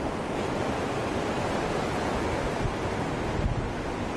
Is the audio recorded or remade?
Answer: recorded